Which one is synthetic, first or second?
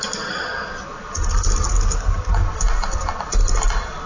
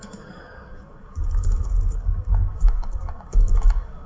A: second